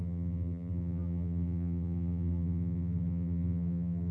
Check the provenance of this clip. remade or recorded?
remade